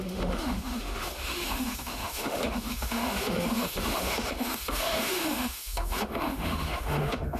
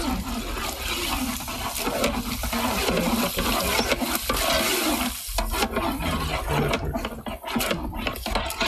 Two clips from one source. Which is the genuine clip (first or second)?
second